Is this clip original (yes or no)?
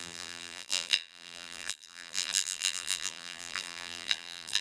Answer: no